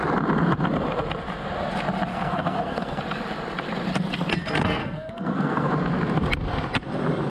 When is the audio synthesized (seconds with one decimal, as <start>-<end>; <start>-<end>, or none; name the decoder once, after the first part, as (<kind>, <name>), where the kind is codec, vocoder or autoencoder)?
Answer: 2.1-3.0 (codec, SNAC); 4.8-5.7